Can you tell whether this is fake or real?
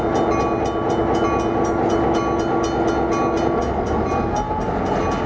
real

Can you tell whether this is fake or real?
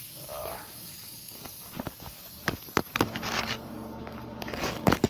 fake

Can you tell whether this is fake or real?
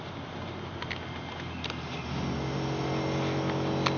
real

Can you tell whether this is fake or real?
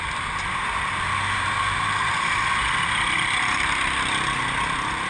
real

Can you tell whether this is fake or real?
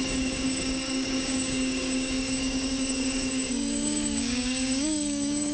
fake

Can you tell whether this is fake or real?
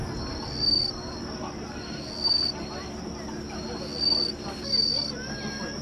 real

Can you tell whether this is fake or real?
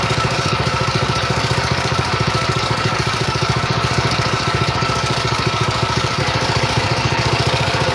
fake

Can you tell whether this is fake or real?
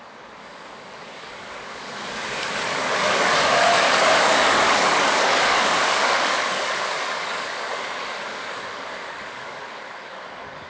fake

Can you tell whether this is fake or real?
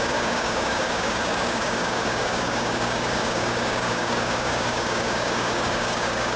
fake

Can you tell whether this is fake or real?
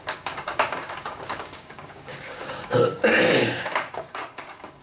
fake